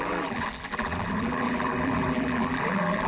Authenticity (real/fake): fake